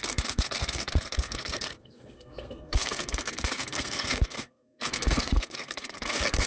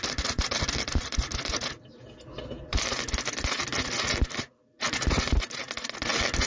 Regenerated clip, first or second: first